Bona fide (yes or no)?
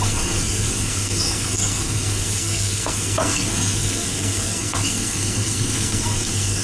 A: no